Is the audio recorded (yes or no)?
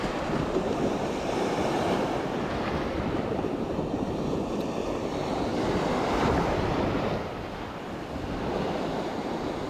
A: no